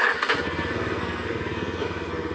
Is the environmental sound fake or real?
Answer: fake